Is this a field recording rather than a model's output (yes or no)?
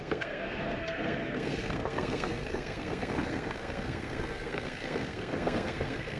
no